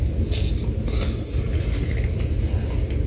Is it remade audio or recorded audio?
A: recorded